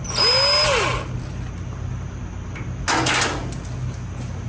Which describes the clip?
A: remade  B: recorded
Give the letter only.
B